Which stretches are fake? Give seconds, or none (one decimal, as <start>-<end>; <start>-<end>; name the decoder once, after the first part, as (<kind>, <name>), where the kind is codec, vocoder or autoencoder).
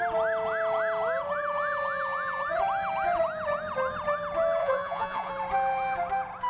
4.6-5.3 (vocoder, Vocos)